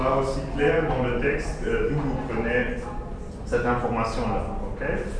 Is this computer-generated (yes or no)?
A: no